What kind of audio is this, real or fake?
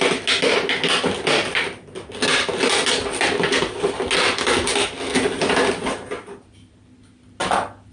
real